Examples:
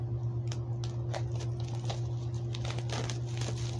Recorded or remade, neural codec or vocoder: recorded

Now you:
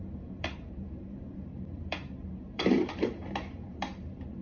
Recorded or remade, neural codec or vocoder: remade, vocoder, BigVGAN v2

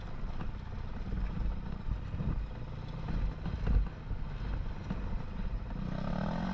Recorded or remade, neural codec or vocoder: recorded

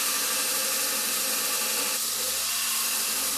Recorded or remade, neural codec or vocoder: recorded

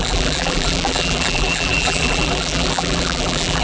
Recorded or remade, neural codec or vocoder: remade, vocoder, BigVGAN v2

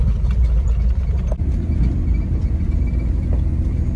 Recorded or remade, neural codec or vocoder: recorded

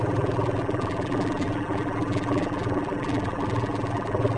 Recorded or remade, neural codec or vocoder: remade, vocoder, BigVGAN v2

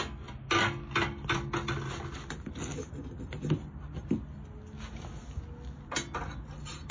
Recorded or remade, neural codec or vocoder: recorded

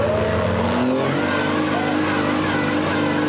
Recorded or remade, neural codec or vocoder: recorded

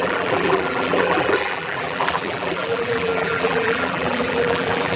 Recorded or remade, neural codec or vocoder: remade, vocoder, BigVGAN v2